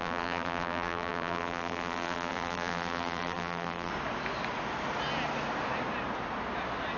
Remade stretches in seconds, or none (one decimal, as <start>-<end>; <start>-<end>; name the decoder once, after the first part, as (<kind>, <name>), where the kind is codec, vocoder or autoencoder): 0.0-3.9 (vocoder, BigVGAN v2)

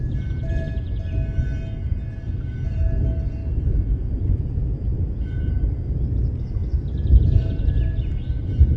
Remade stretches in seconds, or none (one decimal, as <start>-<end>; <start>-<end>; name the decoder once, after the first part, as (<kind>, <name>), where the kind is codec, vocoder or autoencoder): 3.4-5.5 (vocoder, Vocos)